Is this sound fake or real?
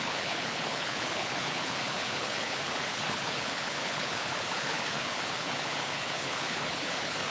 fake